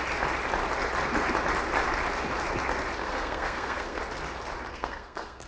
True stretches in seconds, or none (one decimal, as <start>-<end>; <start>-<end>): 0.0-3.0; 4.0-4.7